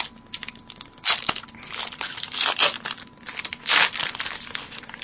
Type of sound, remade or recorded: recorded